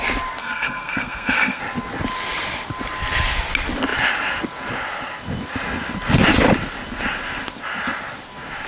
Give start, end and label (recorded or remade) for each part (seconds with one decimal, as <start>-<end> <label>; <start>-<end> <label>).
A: 0.0-0.4 recorded; 0.4-1.6 remade; 1.6-8.7 recorded